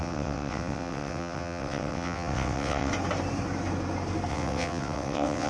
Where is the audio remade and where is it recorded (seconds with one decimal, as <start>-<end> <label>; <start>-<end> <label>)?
0.0-2.9 remade; 2.9-4.3 recorded; 4.3-5.5 remade